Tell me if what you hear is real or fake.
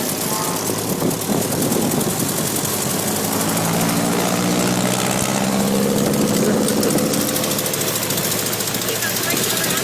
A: real